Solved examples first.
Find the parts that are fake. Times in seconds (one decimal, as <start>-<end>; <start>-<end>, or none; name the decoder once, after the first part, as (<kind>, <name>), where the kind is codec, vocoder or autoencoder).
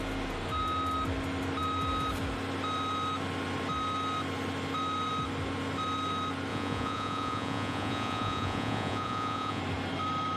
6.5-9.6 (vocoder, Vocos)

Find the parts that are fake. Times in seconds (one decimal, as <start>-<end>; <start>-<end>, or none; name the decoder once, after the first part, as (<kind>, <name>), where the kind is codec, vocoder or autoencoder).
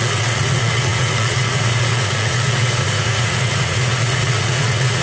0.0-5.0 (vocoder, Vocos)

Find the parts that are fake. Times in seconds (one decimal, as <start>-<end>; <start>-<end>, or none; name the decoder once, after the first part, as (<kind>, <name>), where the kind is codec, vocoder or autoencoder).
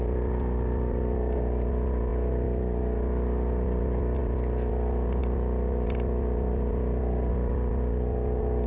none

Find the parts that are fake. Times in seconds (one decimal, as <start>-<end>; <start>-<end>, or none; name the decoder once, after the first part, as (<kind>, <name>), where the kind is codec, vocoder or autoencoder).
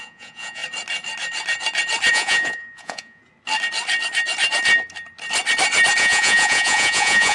0.0-0.6 (vocoder, Vocos); 2.1-3.2; 6.0-7.3